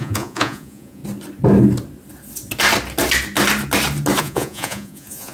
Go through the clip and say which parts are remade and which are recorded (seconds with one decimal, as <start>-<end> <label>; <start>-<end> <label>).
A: 0.0-1.0 remade; 1.0-4.2 recorded; 4.2-5.3 remade